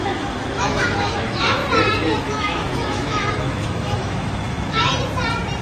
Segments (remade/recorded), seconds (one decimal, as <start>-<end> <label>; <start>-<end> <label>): 0.0-1.6 remade; 1.6-2.2 recorded; 2.2-4.9 remade; 4.9-5.6 recorded